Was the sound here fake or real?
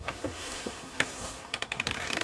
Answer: fake